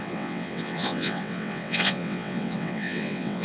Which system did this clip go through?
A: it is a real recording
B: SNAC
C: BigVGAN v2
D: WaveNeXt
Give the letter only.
D